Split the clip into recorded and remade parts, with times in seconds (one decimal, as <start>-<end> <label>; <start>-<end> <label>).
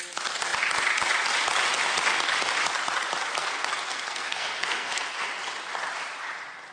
0.0-3.4 recorded; 3.4-5.3 remade; 5.3-6.7 recorded